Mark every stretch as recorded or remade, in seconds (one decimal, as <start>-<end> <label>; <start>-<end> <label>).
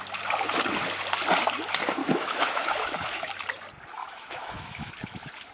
0.0-2.0 recorded; 2.0-3.3 remade; 3.3-4.0 recorded; 4.0-4.9 remade; 4.9-5.5 recorded